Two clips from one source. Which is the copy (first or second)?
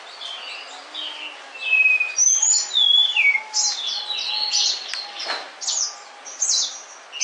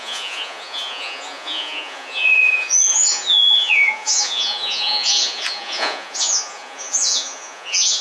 second